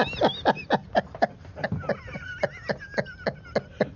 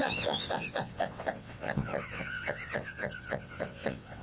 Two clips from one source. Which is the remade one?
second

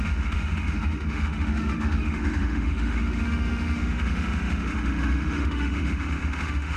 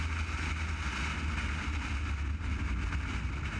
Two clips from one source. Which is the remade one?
first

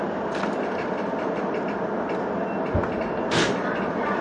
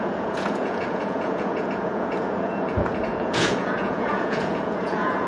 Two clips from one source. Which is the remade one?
second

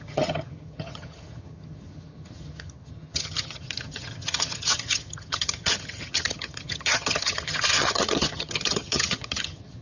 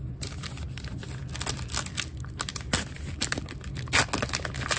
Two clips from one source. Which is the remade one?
first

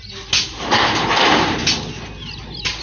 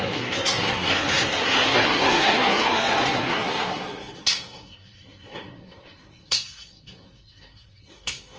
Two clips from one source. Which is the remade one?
second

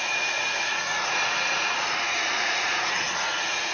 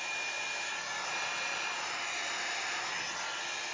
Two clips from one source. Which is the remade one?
first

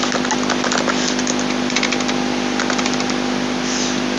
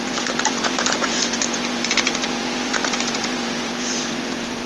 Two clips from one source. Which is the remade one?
second